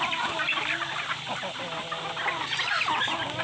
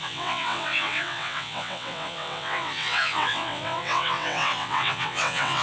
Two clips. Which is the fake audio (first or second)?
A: second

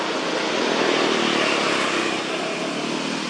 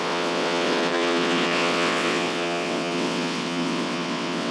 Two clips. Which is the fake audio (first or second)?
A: second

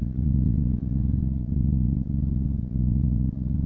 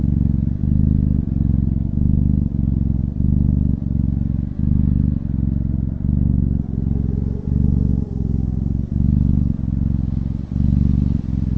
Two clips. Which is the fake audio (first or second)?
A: first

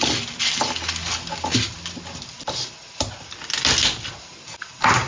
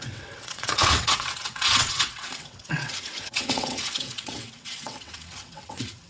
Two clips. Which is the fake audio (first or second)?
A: second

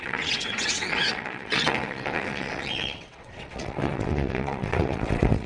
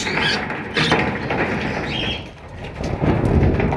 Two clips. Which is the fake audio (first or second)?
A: first